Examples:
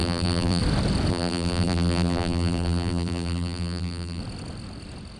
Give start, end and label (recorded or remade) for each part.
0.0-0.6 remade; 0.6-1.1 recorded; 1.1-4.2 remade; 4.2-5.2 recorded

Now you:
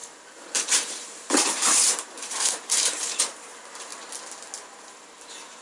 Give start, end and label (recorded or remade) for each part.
0.0-3.9 remade; 3.9-4.7 recorded; 4.7-5.6 remade

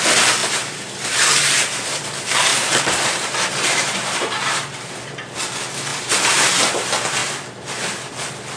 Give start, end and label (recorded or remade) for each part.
0.0-0.4 recorded; 0.4-2.0 remade; 2.0-2.5 recorded; 2.5-4.9 remade; 4.9-5.9 recorded; 5.9-6.5 remade; 6.5-8.6 recorded

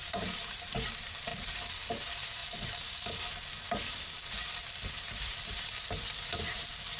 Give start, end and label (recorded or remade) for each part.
0.0-1.3 remade; 1.3-1.9 recorded; 1.9-2.4 remade; 2.4-4.9 recorded; 4.9-7.0 remade